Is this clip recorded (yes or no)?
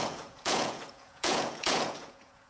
no